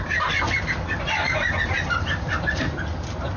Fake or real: real